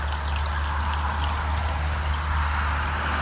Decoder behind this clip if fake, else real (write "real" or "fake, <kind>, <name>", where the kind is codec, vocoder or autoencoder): real